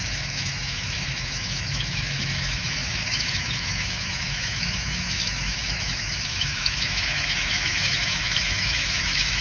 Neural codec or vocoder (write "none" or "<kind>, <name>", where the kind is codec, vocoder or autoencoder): autoencoder, DAC-VAE